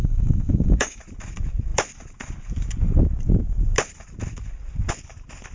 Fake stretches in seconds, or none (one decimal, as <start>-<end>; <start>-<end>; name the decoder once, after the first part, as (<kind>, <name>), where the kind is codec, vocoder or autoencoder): 0.0-1.0 (codec, DAC)

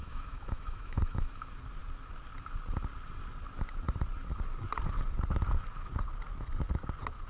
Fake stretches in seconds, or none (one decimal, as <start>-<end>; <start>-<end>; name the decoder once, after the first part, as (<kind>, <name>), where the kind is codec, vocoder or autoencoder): 0.0-1.4 (autoencoder, DAC-VAE)

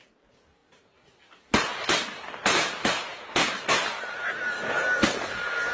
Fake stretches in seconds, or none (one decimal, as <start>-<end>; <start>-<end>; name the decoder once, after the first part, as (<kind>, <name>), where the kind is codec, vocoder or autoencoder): none

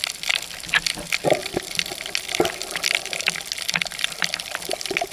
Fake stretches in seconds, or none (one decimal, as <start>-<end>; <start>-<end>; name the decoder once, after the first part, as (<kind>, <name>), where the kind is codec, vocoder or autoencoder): none